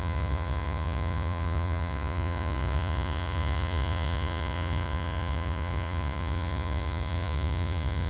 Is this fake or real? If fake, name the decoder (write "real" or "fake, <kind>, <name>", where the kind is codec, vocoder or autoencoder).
fake, vocoder, Vocos